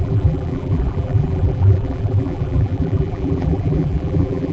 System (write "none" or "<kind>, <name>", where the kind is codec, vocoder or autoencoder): vocoder, BigVGAN v2